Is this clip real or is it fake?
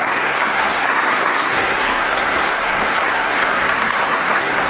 fake